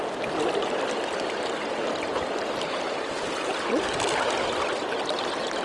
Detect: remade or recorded recorded